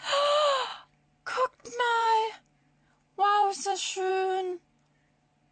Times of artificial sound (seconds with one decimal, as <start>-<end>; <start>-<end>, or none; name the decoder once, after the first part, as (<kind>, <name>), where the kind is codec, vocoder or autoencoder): 0.7-2.6 (vocoder, BigVGAN v2); 3.1-4.1